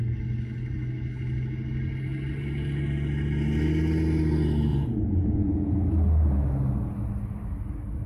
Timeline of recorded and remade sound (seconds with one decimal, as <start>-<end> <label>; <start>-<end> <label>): 0.0-4.7 recorded; 4.7-5.7 remade; 5.7-8.1 recorded